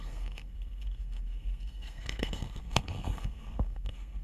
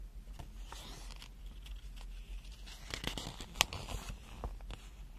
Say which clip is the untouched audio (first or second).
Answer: second